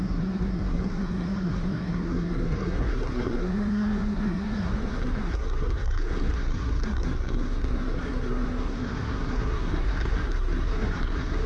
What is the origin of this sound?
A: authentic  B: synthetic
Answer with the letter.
B